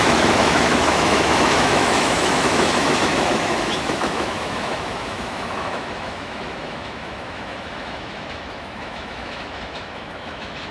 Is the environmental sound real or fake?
fake